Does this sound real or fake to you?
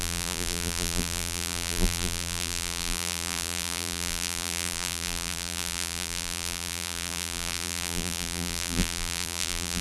fake